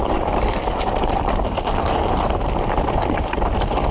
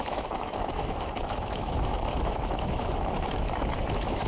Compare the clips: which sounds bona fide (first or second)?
first